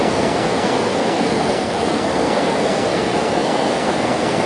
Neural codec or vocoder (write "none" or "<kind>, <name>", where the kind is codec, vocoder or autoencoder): codec, SNAC